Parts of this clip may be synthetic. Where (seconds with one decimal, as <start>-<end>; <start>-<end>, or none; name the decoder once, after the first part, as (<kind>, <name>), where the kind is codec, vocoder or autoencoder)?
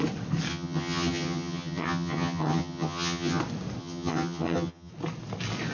0.5-3.4 (vocoder, HiFi-GAN); 3.8-4.9